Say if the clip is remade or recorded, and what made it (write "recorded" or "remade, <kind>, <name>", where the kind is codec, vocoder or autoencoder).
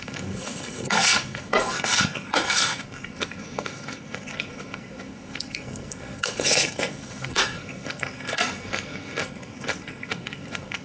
remade, codec, SNAC